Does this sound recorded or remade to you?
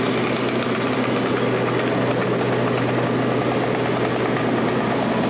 recorded